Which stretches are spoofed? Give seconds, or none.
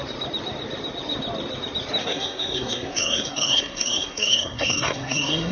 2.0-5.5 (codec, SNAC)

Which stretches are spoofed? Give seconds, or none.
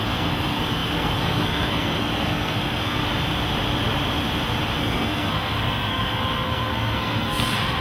0.0-3.0 (codec, SNAC); 4.8-7.8